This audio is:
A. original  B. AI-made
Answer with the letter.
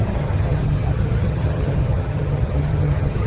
B